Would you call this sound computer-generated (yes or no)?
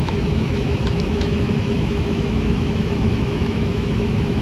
yes